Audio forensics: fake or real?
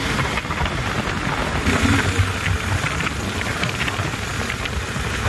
real